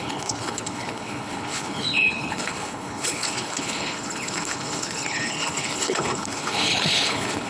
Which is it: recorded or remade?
remade